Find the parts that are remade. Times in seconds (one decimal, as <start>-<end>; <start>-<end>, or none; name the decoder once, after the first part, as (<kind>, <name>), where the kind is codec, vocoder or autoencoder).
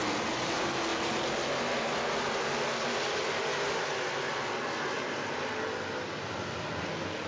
none